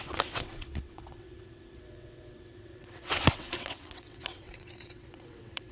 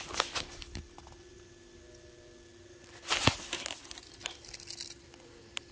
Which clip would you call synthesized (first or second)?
first